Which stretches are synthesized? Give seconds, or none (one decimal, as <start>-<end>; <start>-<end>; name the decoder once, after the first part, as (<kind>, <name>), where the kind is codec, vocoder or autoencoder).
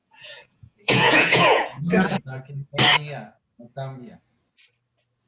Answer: 0.0-2.4 (vocoder, Vocos)